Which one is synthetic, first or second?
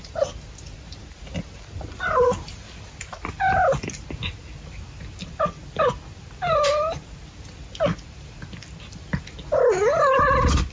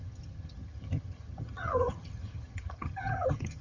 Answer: second